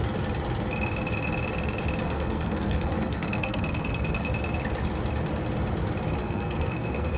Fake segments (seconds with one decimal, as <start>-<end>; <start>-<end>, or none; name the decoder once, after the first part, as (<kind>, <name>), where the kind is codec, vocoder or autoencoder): 2.0-4.3 (codec, SNAC); 6.2-7.2